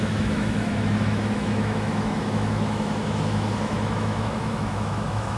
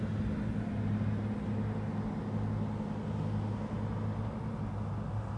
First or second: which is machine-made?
first